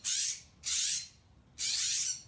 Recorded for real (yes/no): yes